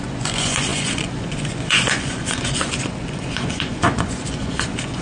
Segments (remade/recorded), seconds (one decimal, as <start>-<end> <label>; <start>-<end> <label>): 0.0-5.0 remade